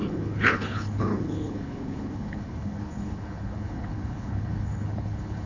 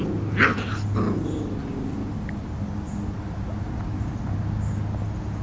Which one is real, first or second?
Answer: second